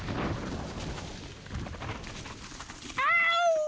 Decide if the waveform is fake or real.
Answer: real